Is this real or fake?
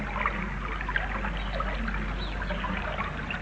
real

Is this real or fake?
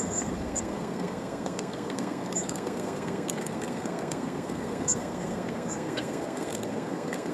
fake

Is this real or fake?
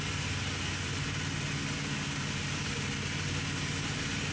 real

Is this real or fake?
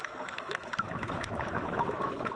fake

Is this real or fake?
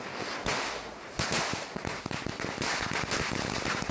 real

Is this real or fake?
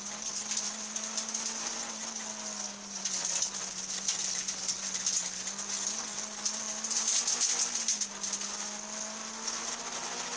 real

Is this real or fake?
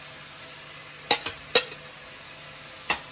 real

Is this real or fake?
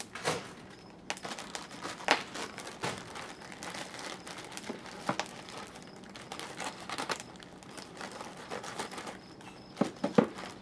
real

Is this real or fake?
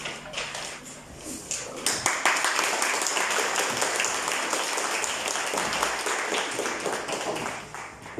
real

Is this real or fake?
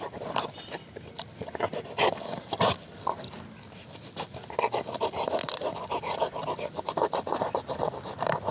real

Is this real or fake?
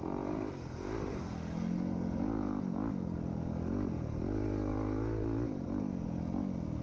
real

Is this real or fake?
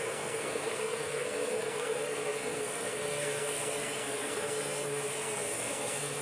fake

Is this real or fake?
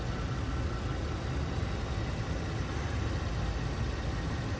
real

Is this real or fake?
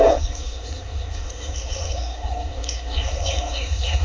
fake